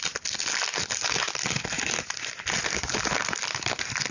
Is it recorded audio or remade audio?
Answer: recorded